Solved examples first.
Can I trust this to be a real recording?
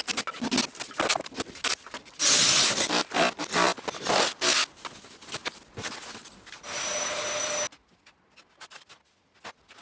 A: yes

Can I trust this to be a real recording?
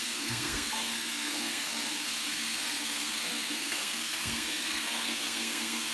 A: no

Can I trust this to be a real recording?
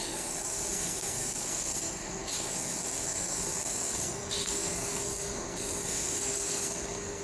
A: no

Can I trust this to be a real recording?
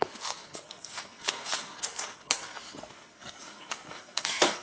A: no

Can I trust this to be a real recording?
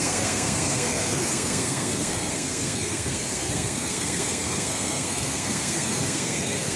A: no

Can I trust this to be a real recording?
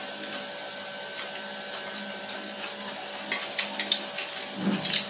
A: yes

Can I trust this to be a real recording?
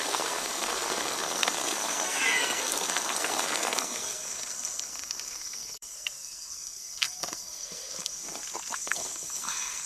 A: no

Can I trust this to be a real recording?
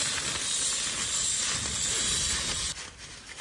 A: yes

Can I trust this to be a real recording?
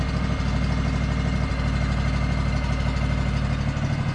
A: yes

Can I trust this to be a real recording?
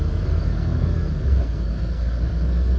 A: no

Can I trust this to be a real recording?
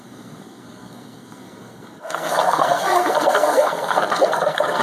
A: no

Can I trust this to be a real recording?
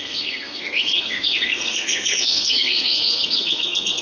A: no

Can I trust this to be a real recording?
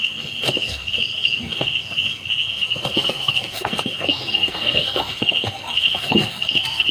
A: no